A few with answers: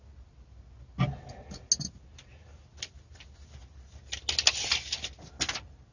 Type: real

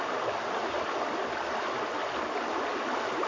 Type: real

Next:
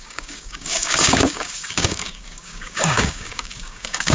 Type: fake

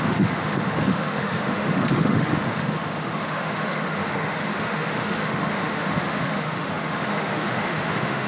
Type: fake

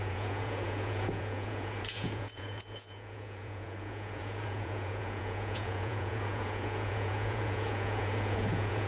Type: fake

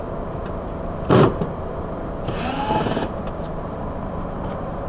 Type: fake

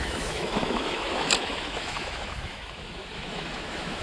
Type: fake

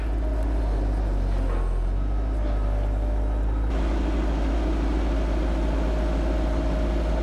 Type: real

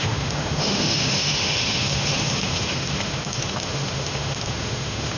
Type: fake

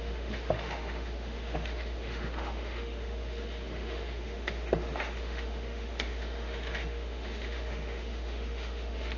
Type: fake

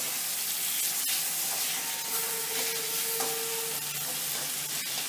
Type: real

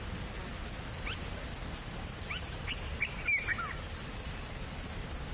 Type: real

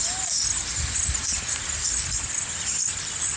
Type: real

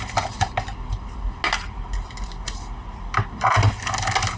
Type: real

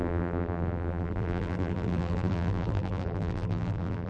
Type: fake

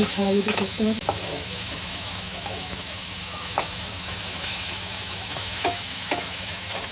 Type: fake